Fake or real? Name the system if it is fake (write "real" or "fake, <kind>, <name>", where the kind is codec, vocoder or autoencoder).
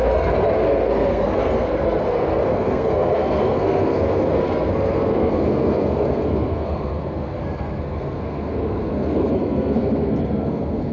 fake, codec, SNAC